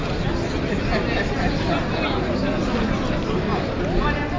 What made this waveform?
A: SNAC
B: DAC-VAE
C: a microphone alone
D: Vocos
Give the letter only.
C